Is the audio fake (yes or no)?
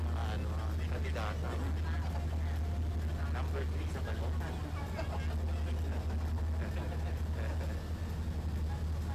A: no